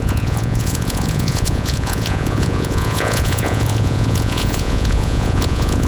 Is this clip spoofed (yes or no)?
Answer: yes